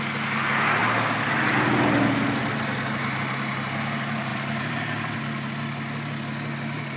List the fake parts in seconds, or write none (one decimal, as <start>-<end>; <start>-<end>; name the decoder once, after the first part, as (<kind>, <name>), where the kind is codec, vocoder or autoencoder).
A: 4.3-5.2 (vocoder, BigVGAN v2)